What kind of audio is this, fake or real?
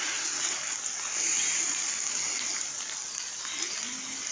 real